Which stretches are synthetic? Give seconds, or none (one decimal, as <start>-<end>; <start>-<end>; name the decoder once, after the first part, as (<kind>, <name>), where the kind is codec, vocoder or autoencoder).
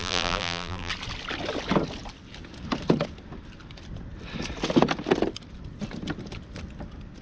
0.0-0.9 (vocoder, BigVGAN v2)